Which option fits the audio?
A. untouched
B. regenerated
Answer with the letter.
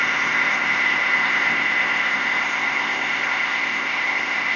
B